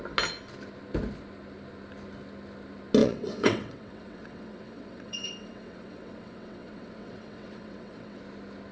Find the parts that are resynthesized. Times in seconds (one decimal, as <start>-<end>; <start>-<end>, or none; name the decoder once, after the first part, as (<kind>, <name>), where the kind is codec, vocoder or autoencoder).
3.0-8.2 (vocoder, WaveNeXt)